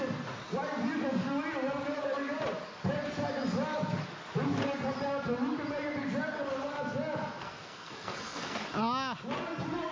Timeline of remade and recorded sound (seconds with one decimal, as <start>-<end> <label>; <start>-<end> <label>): 0.0-7.4 recorded; 7.4-8.6 remade; 8.6-9.9 recorded